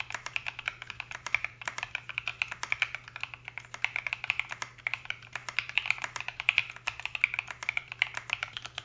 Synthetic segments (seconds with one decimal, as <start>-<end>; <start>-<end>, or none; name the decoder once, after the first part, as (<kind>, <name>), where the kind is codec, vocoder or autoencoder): 0.0-2.3 (vocoder, BigVGAN v2); 4.8-5.4; 6.0-6.6; 7.7-8.8